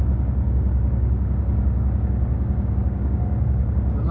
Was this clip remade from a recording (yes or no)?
yes